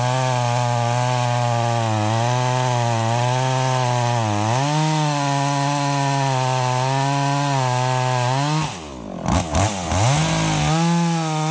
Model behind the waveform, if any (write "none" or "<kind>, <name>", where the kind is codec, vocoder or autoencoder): none